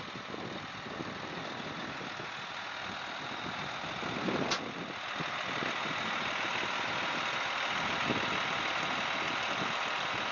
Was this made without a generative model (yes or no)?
yes